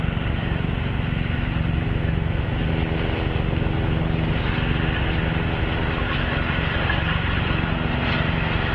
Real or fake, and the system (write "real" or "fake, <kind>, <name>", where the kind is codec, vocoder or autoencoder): real